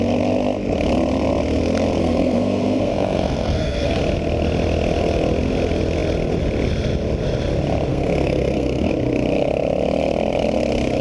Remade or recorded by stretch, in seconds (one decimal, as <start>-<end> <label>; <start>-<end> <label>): 0.0-2.0 recorded; 2.0-4.0 remade; 4.0-7.9 recorded; 7.9-8.9 remade; 8.9-11.0 recorded